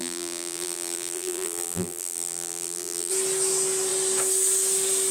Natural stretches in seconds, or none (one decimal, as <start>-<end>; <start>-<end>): 3.1-5.1